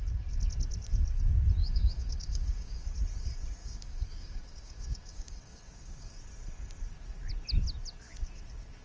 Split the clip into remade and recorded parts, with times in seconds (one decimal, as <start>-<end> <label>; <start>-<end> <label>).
0.0-1.6 recorded; 1.6-2.8 remade; 2.8-3.6 recorded; 3.6-6.1 remade; 6.1-8.8 recorded